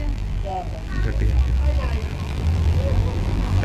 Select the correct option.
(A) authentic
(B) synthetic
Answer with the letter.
B